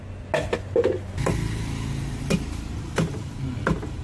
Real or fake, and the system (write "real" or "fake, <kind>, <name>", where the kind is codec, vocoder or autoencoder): real